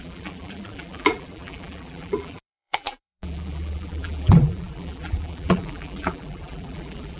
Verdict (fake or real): fake